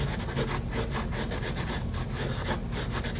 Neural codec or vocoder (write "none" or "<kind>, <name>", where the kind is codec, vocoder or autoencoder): none